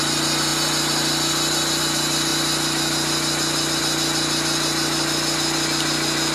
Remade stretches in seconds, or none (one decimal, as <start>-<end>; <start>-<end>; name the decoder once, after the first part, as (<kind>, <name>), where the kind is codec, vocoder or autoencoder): none

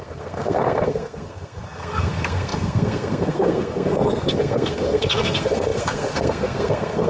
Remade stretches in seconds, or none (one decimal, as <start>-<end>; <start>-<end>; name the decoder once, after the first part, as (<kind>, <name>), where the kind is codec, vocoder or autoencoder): 0.0-7.1 (codec, SNAC)

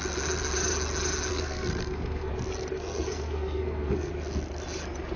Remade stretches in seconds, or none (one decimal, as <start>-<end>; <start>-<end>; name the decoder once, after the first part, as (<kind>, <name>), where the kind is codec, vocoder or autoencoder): 1.3-2.3 (codec, SNAC); 2.7-4.1